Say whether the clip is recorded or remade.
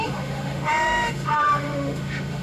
remade